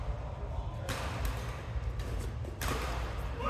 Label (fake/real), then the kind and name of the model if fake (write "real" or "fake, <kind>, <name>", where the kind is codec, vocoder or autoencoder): real